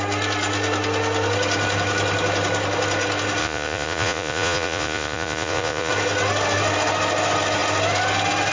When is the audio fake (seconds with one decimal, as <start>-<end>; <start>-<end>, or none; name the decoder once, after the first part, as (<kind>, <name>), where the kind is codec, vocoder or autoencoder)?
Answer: 3.4-5.9 (vocoder, Vocos)